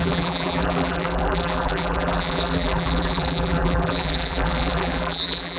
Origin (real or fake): fake